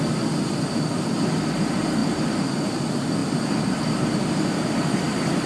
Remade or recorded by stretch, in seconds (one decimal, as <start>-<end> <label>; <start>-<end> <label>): 0.0-5.5 recorded